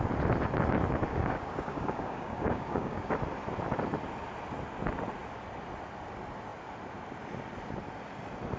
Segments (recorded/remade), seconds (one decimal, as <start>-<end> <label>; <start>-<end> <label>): 0.0-1.1 recorded; 1.1-3.1 remade; 3.1-8.6 recorded